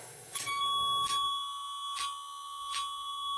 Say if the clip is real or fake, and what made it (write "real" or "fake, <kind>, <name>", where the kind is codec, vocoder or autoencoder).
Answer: fake, autoencoder, DAC-VAE